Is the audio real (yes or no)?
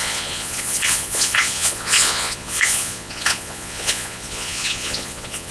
no